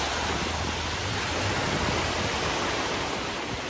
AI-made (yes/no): no